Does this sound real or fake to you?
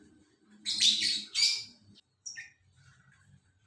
fake